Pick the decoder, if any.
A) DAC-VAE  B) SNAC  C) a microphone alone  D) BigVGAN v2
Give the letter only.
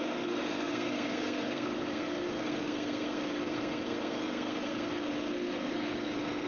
B